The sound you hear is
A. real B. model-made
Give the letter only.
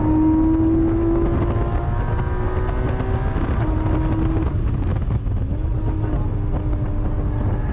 A